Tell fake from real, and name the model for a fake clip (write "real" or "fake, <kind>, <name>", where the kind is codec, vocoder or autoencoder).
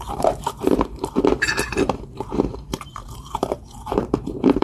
fake, vocoder, BigVGAN v2